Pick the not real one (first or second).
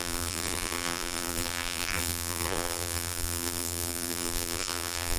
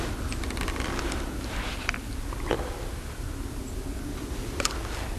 first